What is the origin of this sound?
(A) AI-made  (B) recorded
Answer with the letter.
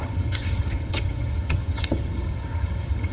A